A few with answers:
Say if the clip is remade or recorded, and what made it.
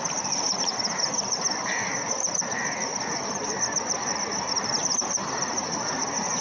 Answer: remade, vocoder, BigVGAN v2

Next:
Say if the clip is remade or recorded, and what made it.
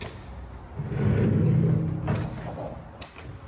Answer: recorded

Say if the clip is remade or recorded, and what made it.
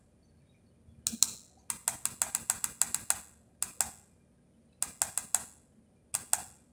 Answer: recorded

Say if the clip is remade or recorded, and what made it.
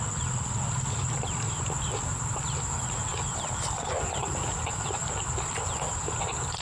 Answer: recorded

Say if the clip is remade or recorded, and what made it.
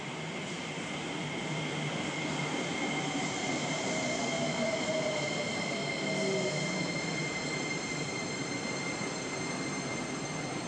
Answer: remade, vocoder, BigVGAN v2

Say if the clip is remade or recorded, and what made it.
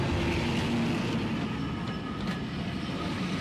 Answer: recorded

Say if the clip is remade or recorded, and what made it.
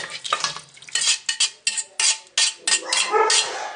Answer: recorded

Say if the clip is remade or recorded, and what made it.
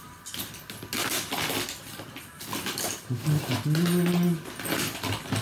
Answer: recorded